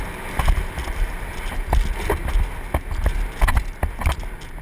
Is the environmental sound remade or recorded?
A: recorded